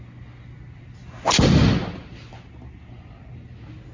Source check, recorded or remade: recorded